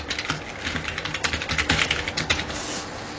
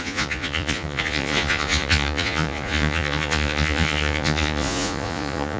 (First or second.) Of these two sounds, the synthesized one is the second